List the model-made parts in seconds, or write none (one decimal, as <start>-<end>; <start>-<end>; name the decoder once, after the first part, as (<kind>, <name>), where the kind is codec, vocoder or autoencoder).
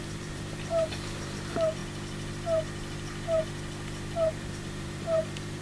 0.0-1.8 (vocoder, BigVGAN v2); 4.3-5.6